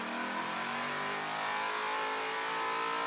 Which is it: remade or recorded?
recorded